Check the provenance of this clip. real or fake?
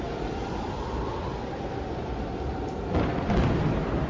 real